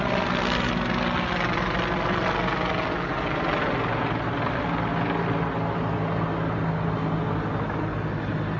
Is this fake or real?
real